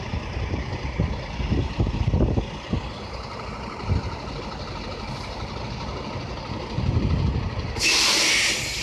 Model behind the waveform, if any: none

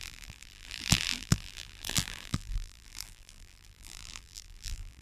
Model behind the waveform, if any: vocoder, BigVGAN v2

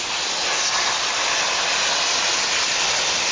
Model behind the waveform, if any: none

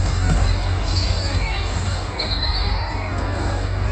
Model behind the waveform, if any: codec, DAC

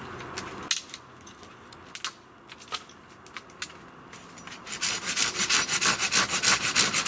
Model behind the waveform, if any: none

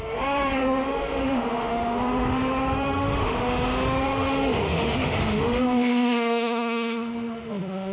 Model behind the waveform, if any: autoencoder, DAC-VAE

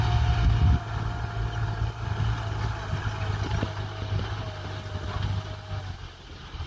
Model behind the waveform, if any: none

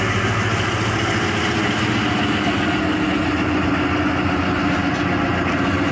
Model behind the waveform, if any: none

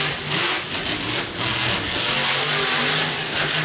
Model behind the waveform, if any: none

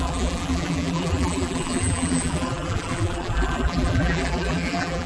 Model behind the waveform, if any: vocoder, BigVGAN v2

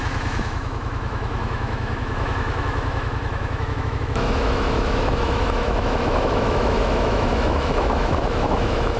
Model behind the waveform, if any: autoencoder, DAC-VAE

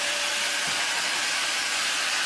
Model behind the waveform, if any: vocoder, BigVGAN v2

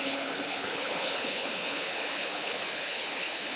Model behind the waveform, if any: codec, HILCodec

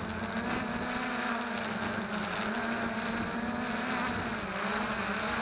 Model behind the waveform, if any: none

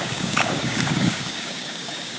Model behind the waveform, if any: codec, DAC